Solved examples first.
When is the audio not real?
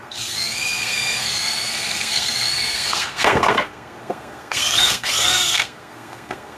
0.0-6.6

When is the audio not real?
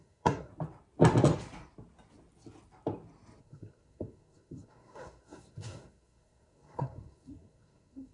0.0-0.5; 3.4-8.1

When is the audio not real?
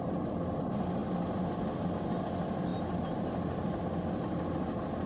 none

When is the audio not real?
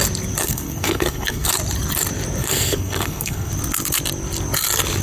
0.4-1.5; 2.4-3.5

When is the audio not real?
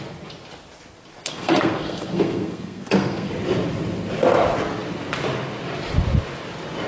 1.3-3.3